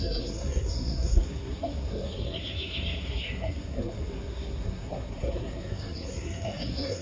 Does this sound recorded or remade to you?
remade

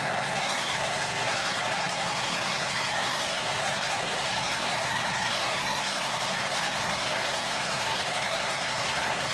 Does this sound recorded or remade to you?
remade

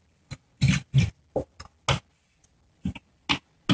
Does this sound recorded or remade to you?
recorded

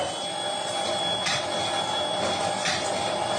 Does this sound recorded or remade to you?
recorded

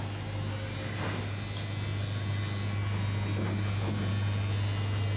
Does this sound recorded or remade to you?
recorded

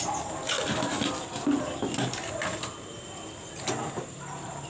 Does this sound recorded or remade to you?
recorded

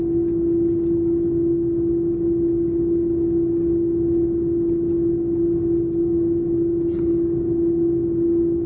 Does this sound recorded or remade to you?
recorded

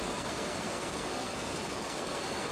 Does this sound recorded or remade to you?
remade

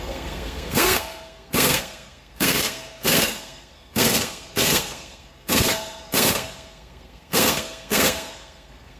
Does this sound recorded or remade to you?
remade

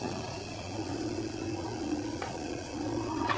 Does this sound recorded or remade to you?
remade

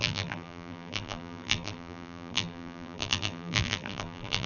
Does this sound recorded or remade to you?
remade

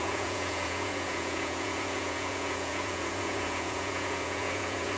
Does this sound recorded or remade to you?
remade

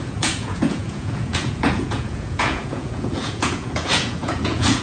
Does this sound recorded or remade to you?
remade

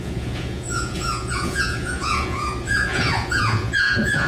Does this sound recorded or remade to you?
remade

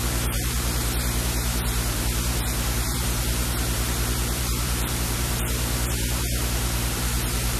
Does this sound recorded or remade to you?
remade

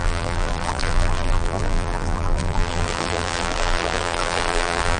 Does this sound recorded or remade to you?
remade